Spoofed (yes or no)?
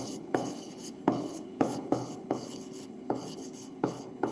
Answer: yes